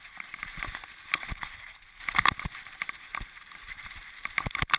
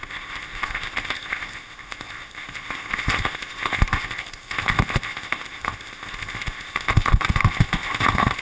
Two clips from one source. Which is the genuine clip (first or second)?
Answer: first